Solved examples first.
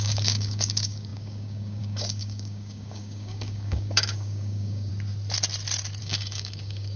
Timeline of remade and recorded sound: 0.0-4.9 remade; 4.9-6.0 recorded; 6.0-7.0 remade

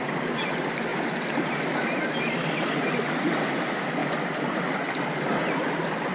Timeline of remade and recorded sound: 0.0-6.1 recorded

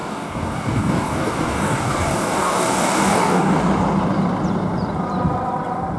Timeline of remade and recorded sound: 0.0-3.6 remade; 3.6-6.0 recorded

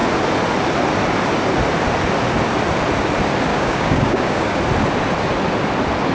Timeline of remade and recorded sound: 0.0-3.5 recorded; 3.5-4.6 remade; 4.6-6.1 recorded

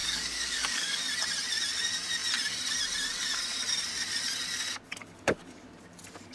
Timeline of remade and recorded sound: 0.0-1.0 remade; 1.0-5.0 recorded; 5.0-5.8 remade; 5.8-6.3 recorded

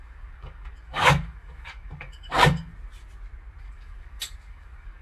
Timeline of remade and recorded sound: 0.0-2.7 remade; 2.7-3.6 recorded; 3.6-5.0 remade

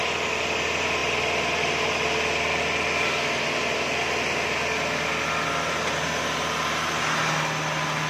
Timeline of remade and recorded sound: 0.0-8.1 recorded